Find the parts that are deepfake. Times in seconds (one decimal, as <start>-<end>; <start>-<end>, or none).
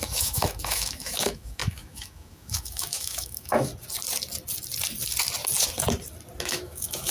0.0-3.7; 6.4-7.1